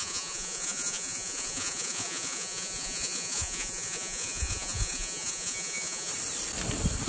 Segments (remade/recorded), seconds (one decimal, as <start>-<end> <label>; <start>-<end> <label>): 0.0-6.1 remade; 6.1-7.1 recorded